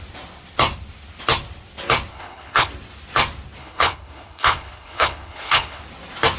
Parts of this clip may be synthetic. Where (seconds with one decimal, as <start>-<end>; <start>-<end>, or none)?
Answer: 2.1-2.7; 3.6-5.8